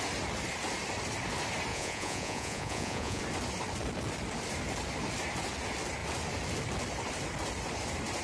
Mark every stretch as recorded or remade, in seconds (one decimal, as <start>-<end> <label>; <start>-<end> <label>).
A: 0.0-1.7 recorded; 1.7-3.2 remade; 3.2-8.2 recorded